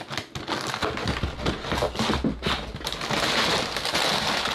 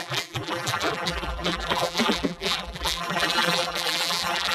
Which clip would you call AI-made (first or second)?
second